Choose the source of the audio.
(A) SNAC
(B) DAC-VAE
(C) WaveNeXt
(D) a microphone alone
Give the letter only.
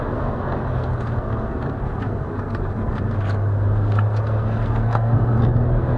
A